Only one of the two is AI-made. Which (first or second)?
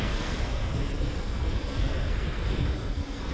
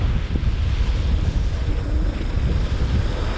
first